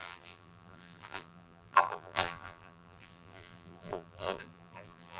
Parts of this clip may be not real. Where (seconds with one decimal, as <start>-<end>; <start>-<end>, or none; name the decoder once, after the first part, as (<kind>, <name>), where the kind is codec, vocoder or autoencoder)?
0.0-5.2 (vocoder, BigVGAN v2)